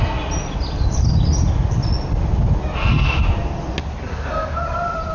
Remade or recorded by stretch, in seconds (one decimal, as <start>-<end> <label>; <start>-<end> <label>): 0.0-5.1 recorded